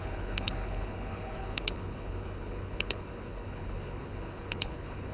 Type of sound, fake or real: fake